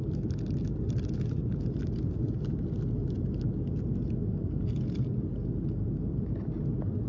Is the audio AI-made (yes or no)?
no